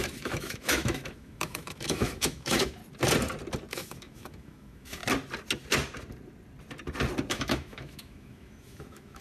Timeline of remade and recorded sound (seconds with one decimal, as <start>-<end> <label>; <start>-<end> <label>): 0.0-2.8 remade; 2.8-3.7 recorded; 3.7-5.0 remade; 5.0-7.3 recorded; 7.3-9.2 remade